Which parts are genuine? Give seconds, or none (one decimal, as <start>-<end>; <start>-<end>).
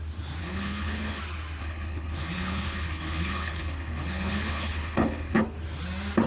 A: 0.0-0.4; 1.2-1.6; 5.4-6.3